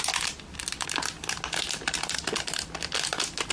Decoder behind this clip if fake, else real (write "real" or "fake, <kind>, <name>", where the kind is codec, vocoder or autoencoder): real